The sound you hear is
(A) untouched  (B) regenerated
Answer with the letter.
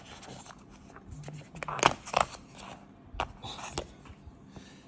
A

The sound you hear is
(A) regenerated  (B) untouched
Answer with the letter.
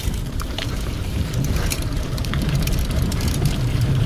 A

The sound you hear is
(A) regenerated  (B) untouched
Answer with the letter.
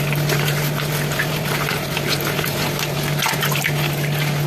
B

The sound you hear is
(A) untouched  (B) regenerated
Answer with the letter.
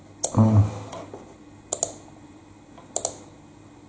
A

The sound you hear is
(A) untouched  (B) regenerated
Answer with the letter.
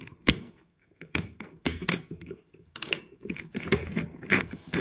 B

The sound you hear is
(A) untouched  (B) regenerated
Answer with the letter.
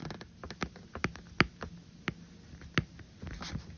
A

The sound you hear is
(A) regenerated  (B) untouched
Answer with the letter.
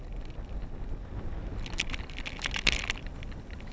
B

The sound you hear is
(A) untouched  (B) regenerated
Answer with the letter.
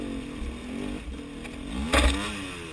A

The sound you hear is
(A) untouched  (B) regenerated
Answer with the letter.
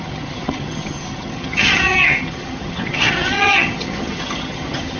B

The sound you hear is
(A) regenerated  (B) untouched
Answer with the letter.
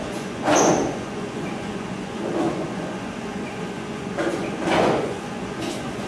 A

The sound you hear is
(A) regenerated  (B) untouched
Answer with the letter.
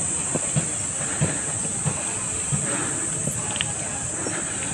B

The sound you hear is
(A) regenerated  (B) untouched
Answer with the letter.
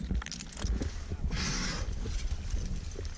B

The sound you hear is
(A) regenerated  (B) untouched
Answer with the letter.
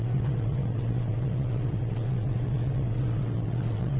A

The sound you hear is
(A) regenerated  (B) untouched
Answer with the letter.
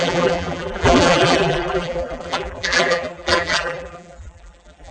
A